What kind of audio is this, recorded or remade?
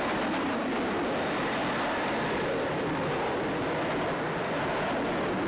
recorded